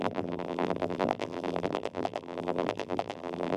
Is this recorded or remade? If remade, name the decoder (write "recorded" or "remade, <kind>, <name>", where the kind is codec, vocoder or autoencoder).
remade, vocoder, BigVGAN v2